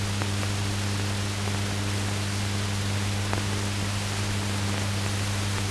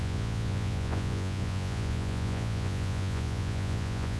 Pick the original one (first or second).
first